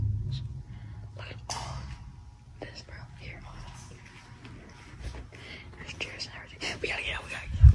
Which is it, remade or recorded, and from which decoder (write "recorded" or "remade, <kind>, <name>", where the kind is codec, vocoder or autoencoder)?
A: recorded